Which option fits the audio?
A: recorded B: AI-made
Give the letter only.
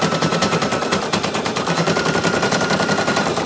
B